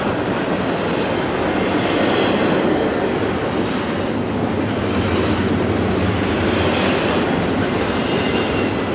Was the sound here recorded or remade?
recorded